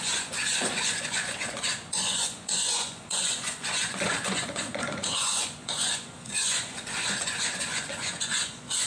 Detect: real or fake fake